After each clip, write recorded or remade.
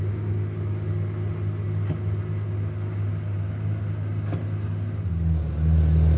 recorded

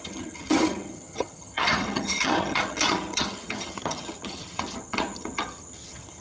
remade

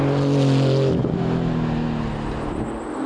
recorded